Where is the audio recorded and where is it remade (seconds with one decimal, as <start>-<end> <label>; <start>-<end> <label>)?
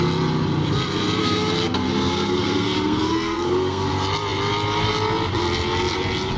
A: 0.0-1.2 recorded; 1.2-3.9 remade; 3.9-6.4 recorded